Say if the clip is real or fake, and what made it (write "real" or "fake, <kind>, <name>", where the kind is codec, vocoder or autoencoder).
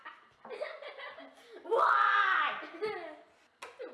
real